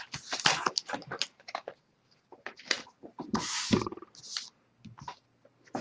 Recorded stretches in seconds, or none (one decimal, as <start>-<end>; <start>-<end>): 0.0-0.6; 4.1-5.8